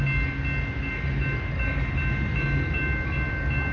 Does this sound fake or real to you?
real